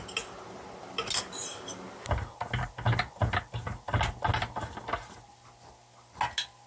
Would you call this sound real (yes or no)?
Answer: yes